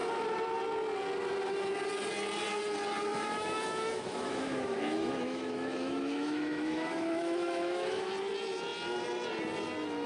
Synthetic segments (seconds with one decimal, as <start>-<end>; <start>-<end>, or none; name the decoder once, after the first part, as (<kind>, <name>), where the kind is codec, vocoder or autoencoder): 3.1-8.1 (autoencoder, DAC-VAE)